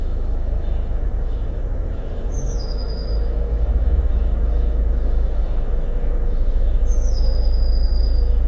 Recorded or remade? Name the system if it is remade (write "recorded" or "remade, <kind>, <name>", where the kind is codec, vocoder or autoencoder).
remade, autoencoder, DAC-VAE